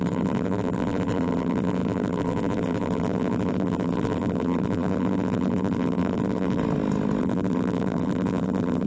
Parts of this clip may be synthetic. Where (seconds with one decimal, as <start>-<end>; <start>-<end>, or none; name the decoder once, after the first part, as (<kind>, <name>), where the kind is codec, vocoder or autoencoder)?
0.0-6.6 (vocoder, BigVGAN v2); 7.2-8.9